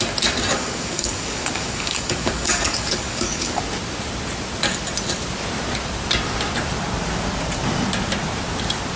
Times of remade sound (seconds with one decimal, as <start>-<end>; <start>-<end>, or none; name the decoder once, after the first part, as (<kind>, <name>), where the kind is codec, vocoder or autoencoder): 0.5-3.6 (codec, DAC)